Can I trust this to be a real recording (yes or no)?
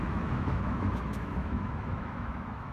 no